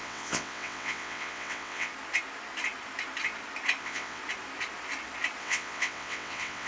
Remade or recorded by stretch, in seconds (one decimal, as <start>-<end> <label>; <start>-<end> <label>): 0.0-1.9 remade; 1.9-3.8 recorded; 3.8-4.2 remade; 4.2-5.4 recorded; 5.4-6.7 remade